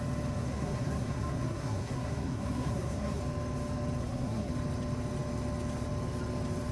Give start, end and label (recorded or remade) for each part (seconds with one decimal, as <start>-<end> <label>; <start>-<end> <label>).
0.0-0.4 recorded; 0.4-3.2 remade; 3.2-4.0 recorded; 4.0-4.5 remade; 4.5-6.7 recorded